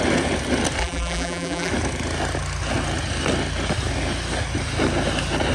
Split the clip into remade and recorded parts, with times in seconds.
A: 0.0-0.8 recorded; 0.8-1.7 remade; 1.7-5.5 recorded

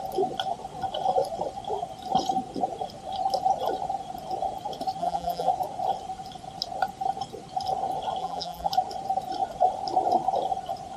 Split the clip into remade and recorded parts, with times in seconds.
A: 0.0-5.0 recorded; 5.0-5.5 remade; 5.5-8.2 recorded; 8.2-8.7 remade; 8.7-11.0 recorded

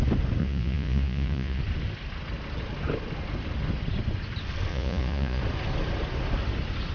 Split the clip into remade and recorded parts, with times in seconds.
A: 0.0-0.4 recorded; 0.4-1.6 remade; 1.6-4.7 recorded; 4.7-5.4 remade; 5.4-6.9 recorded